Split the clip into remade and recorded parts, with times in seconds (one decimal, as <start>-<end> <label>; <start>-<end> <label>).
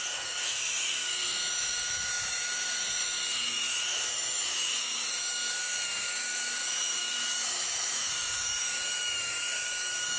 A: 0.0-10.2 remade